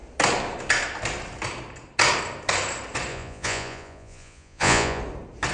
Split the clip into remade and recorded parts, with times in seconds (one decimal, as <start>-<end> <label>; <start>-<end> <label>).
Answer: 0.0-3.1 recorded; 3.1-5.0 remade; 5.0-5.5 recorded